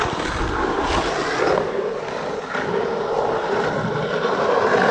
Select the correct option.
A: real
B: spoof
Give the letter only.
A